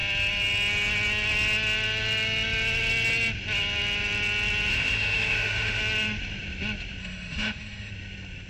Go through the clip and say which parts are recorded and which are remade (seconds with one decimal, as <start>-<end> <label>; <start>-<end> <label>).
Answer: 0.0-4.7 recorded; 4.7-5.8 remade; 5.8-7.0 recorded; 7.0-7.9 remade; 7.9-8.5 recorded